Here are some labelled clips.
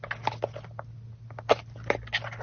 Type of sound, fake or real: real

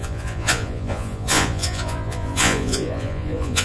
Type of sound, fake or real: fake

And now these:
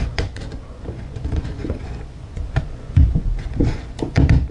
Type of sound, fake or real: fake